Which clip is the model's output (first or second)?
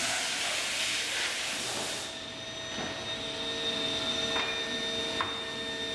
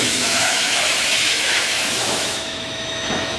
second